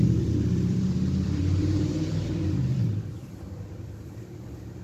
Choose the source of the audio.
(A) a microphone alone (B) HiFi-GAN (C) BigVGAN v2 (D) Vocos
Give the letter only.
C